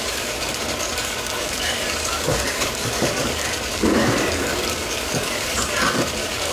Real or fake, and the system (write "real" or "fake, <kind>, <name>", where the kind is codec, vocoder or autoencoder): fake, codec, DAC